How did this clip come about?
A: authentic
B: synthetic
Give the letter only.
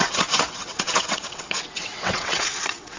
B